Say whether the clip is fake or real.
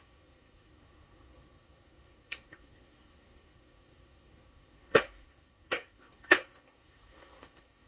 fake